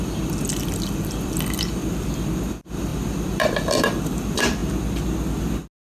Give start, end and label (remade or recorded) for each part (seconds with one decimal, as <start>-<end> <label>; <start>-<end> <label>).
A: 0.0-1.8 remade; 1.8-2.5 recorded; 2.5-4.6 remade; 4.6-5.8 recorded

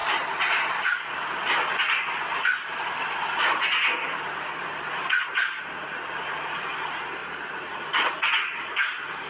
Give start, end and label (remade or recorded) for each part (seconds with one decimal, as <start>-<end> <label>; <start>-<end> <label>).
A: 0.0-9.3 recorded

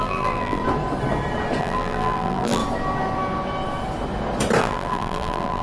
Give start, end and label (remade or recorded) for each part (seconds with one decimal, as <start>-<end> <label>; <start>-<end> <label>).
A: 0.0-0.6 remade; 0.6-1.6 recorded; 1.6-2.6 remade; 2.6-4.6 recorded; 4.6-5.6 remade